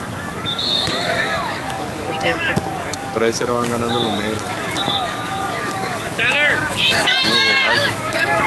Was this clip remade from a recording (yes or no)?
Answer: yes